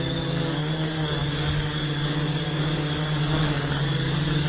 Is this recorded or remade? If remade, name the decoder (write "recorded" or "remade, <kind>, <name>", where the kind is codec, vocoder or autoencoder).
remade, codec, DAC